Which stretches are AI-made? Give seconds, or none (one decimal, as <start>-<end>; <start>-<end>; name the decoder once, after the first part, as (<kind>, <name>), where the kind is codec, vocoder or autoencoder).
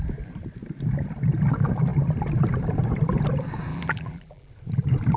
3.7-4.5 (vocoder, BigVGAN v2)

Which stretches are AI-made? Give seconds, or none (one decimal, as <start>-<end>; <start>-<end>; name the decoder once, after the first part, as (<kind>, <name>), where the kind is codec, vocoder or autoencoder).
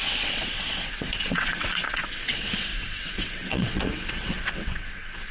0.0-5.3 (vocoder, WaveNeXt)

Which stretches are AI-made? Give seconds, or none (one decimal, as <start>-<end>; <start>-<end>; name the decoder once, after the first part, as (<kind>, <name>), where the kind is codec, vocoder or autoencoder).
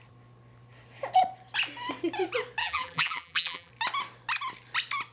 2.6-3.7 (vocoder, BigVGAN v2)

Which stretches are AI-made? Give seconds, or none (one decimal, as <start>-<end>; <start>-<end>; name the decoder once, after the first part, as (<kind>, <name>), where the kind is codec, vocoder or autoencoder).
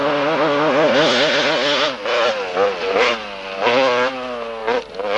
none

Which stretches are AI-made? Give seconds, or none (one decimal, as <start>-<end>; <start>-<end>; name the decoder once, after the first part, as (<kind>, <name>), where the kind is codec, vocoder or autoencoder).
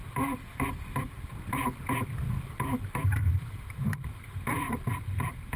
3.4-5.6 (vocoder, BigVGAN v2)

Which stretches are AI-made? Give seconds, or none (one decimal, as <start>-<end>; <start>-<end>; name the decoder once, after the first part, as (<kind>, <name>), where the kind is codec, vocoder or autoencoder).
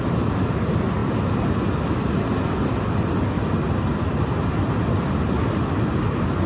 none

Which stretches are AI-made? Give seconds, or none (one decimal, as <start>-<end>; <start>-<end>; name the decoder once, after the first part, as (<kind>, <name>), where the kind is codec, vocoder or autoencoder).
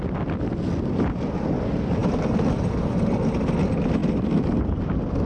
4.0-5.3 (vocoder, BigVGAN v2)